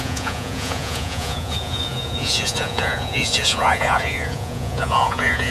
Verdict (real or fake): fake